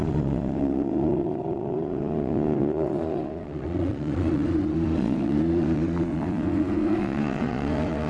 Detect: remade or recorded remade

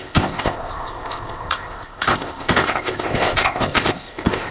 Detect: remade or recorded remade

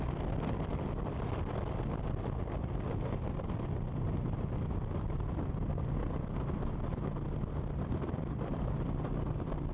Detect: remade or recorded remade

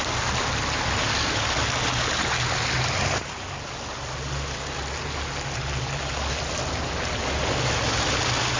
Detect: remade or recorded recorded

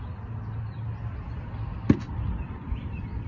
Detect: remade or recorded recorded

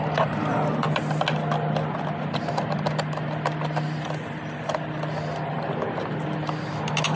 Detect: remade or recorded recorded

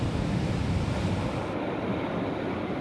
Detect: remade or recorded recorded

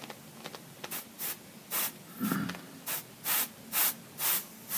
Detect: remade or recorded recorded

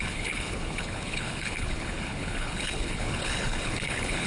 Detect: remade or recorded remade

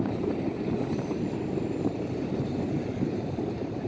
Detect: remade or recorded remade